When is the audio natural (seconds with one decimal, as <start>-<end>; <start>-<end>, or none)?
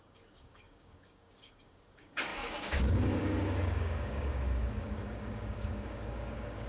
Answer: none